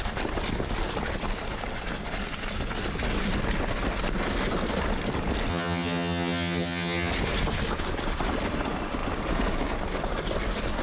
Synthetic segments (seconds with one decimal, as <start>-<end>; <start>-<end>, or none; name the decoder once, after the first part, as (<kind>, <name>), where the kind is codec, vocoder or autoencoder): 5.5-7.1 (vocoder, HiFi-GAN)